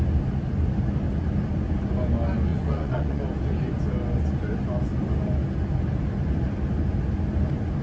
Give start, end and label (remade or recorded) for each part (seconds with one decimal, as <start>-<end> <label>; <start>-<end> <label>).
0.0-2.5 recorded; 2.5-3.2 remade; 3.2-7.8 recorded